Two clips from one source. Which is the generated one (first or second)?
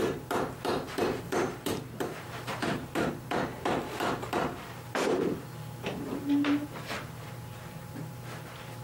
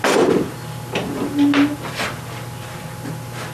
first